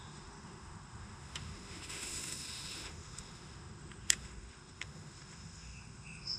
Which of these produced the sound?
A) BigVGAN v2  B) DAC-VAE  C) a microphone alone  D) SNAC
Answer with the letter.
B